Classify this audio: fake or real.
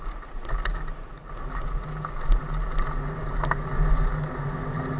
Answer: real